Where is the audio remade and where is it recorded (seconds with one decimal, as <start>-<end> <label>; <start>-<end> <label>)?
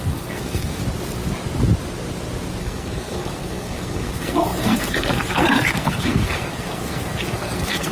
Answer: 0.0-0.8 remade; 0.8-2.6 recorded; 2.6-7.9 remade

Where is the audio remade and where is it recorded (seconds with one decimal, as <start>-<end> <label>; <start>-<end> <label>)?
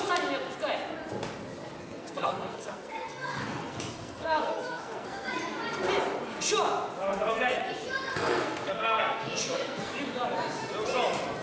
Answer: 0.0-1.8 recorded; 1.8-5.4 remade; 5.4-7.0 recorded; 7.0-7.6 remade; 7.6-8.1 recorded; 8.1-9.9 remade; 9.9-11.4 recorded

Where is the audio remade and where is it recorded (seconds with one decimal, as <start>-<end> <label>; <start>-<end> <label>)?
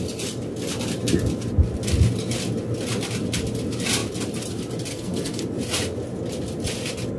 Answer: 0.0-4.9 recorded; 4.9-5.4 remade; 5.4-7.2 recorded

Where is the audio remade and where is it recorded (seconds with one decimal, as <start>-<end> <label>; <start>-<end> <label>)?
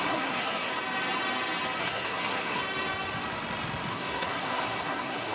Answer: 0.0-0.7 remade; 0.7-1.8 recorded; 1.8-2.6 remade; 2.6-3.9 recorded; 3.9-5.3 remade